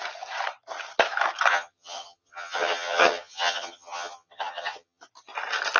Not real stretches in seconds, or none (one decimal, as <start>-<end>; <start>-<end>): 1.5-5.0